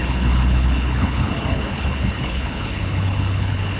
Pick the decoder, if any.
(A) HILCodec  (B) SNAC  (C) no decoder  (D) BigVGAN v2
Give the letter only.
A